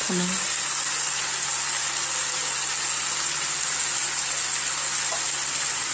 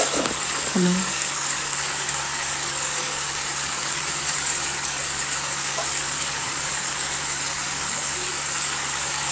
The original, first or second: first